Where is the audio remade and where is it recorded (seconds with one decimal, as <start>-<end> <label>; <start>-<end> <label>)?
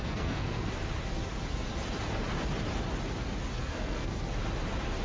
0.0-0.7 remade; 0.7-3.6 recorded; 3.6-4.2 remade; 4.2-5.0 recorded